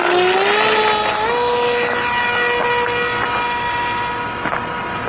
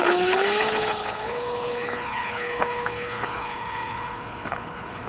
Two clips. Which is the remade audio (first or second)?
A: second